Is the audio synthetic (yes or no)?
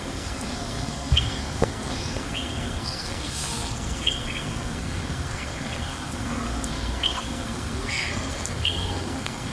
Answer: yes